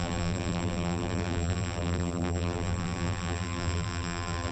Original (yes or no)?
no